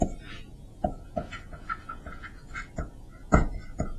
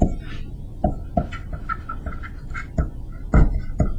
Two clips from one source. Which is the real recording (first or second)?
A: second